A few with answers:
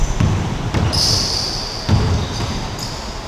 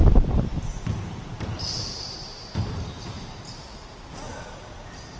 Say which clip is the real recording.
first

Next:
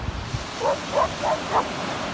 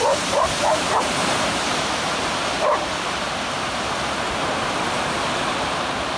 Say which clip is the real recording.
first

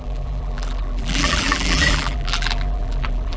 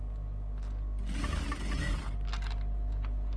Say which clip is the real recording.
second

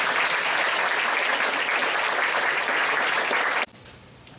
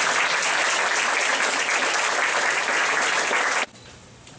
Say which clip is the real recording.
second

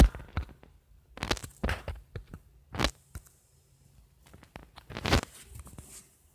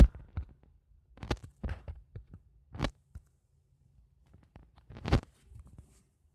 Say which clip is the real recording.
first